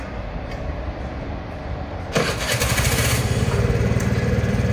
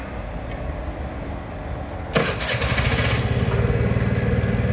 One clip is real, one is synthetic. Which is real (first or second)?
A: second